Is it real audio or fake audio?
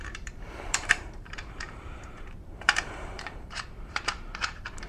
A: fake